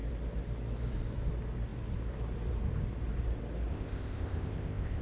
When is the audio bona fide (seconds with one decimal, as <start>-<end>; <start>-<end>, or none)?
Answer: 0.0-3.7